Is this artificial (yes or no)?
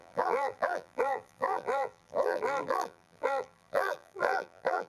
yes